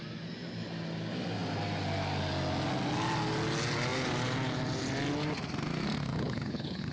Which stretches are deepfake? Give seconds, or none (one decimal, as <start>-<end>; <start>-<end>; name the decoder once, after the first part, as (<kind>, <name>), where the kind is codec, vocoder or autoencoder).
6.1-6.9 (codec, HILCodec)